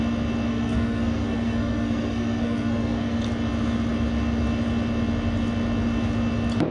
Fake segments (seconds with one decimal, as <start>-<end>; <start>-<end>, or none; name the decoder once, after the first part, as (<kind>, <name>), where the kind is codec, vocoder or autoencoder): 0.5-3.2 (codec, SNAC)